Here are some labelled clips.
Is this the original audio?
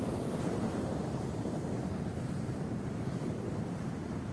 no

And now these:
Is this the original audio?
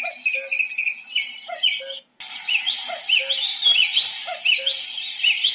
yes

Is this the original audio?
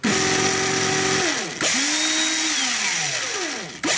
yes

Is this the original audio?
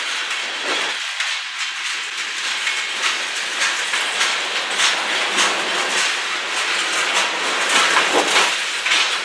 yes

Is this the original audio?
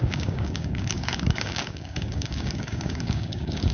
no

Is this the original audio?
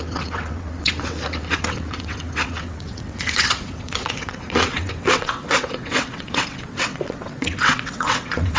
no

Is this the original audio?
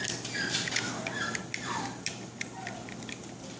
yes